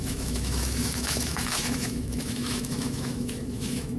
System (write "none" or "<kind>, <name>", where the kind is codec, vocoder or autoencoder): autoencoder, DAC-VAE